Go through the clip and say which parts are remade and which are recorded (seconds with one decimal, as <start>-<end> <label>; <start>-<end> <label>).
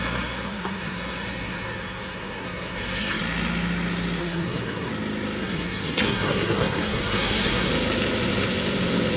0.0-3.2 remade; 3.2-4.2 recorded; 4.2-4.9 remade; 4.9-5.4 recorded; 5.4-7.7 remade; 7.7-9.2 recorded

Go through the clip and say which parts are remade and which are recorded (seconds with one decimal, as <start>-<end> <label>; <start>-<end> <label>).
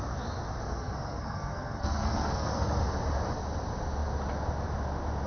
0.0-0.6 recorded; 0.6-2.8 remade; 2.8-5.3 recorded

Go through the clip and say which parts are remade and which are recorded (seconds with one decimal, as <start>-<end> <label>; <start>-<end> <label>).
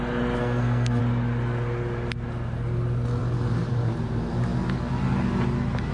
0.0-0.4 recorded; 0.4-1.0 remade; 1.0-5.9 recorded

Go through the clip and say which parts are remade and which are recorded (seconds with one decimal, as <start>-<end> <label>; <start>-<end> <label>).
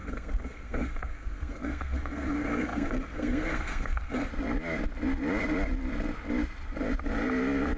0.0-4.3 remade; 4.3-7.8 recorded